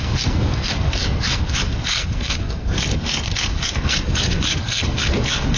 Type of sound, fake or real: fake